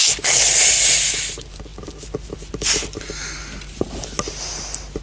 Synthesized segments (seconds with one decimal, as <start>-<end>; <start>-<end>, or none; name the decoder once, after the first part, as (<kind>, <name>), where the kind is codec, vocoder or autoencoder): none